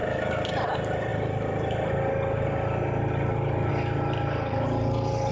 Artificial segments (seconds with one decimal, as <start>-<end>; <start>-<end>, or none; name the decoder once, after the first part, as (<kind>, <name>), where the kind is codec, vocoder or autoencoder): none